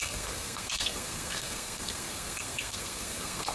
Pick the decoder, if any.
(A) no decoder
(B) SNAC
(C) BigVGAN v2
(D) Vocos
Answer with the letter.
B